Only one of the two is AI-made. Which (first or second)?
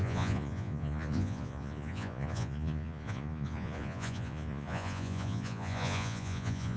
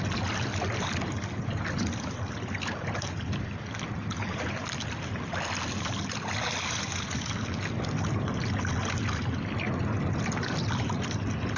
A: first